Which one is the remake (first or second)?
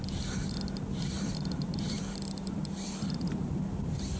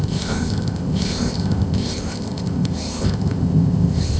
second